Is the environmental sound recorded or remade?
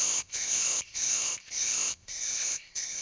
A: remade